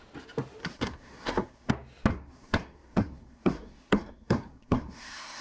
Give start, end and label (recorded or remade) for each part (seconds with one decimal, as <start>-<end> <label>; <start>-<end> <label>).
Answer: 0.0-0.6 recorded; 0.6-1.7 remade; 1.7-2.1 recorded; 2.1-5.4 remade